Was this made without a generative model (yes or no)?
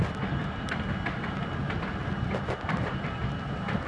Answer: yes